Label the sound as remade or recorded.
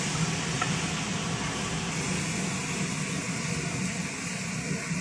recorded